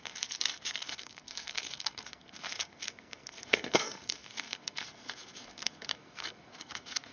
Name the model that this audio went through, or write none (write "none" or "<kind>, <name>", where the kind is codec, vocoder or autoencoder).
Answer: codec, SNAC